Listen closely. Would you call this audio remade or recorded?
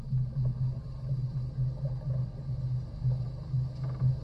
recorded